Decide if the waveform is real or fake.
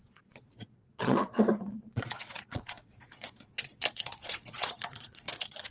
fake